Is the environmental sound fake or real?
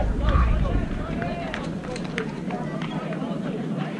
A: fake